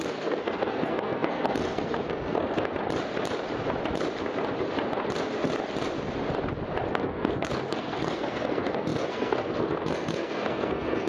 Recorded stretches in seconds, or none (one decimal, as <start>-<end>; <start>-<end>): 2.7-6.9